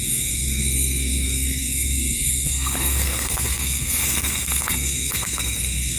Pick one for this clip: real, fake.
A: fake